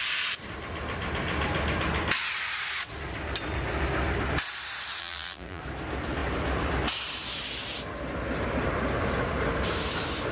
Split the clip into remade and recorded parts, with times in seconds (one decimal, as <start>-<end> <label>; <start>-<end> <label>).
0.0-5.0 recorded; 5.0-5.6 remade; 5.6-10.3 recorded